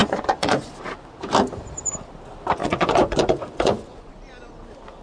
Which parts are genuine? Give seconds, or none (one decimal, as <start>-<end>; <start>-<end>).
0.7-2.6; 4.1-5.0